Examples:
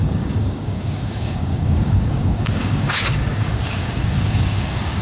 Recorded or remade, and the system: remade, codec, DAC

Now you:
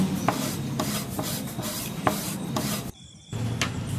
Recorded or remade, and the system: recorded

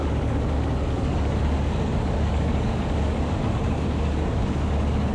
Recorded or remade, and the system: remade, codec, DAC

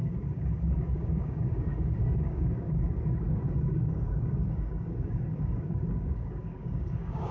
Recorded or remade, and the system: remade, codec, DAC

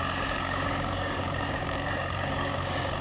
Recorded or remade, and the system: remade, codec, DAC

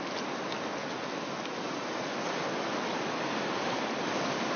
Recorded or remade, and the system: recorded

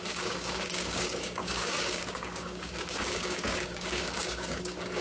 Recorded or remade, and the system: remade, codec, DAC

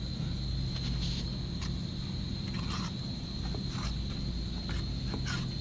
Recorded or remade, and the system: recorded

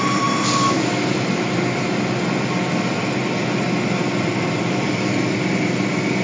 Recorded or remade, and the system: recorded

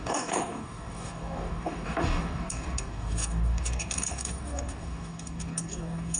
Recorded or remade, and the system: remade, codec, DAC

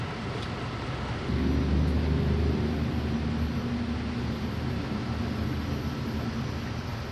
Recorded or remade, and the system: recorded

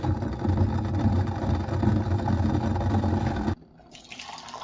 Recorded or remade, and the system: recorded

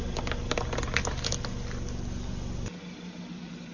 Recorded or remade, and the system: recorded